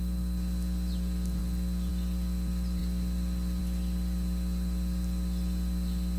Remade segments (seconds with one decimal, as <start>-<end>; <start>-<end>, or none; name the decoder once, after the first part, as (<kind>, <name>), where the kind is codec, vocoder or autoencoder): none